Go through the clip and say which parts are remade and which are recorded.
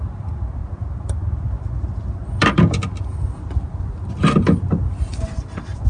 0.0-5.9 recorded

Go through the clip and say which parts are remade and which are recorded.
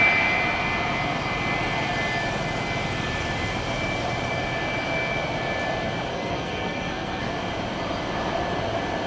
0.0-6.1 recorded; 6.1-7.3 remade; 7.3-9.1 recorded